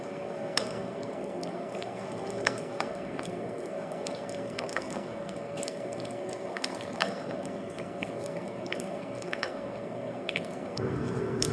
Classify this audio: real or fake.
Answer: fake